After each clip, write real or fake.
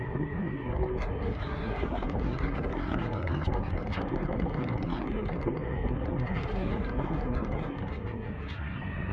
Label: fake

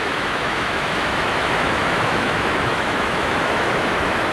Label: fake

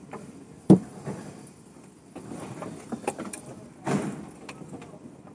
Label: fake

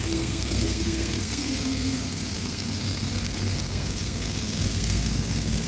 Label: fake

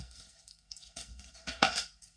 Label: fake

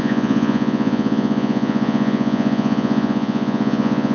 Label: fake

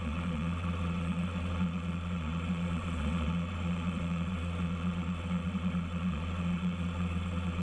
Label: fake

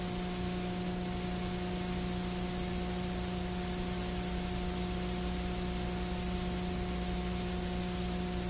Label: real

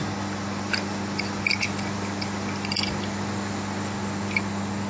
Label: real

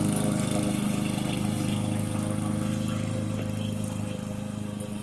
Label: real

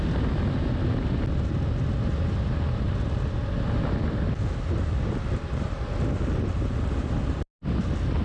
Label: real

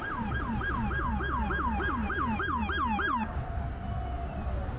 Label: real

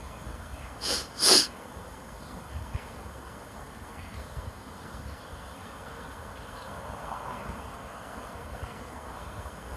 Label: fake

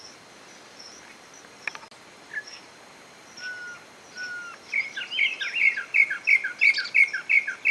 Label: real